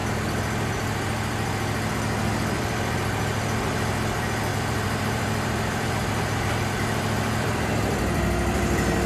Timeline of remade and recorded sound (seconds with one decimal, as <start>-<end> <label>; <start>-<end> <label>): 0.0-4.5 recorded; 4.5-9.1 remade